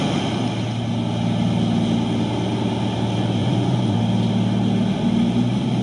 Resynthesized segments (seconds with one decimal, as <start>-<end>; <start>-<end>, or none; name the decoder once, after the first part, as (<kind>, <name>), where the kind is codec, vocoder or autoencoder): 3.4-4.0 (vocoder, Vocos)